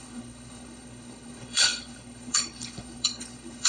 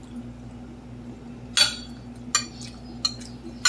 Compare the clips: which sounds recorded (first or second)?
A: second